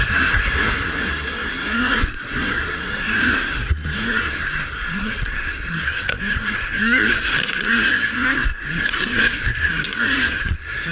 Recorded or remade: remade